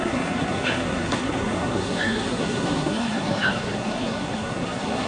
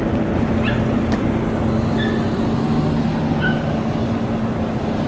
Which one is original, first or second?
second